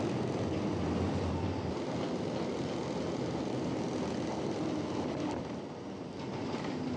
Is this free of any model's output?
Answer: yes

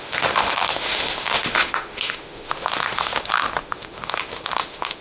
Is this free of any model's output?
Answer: no